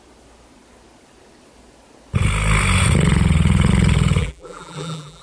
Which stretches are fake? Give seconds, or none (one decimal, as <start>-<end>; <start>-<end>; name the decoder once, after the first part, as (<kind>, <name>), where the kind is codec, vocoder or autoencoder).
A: 4.2-5.2 (vocoder, BigVGAN v2)